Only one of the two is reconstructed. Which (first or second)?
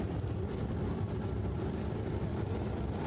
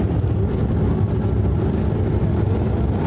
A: first